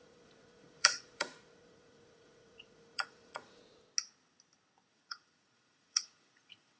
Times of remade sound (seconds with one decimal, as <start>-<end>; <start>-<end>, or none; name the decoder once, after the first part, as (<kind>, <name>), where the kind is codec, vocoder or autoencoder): 0.0-3.6 (vocoder, Vocos); 4.9-6.8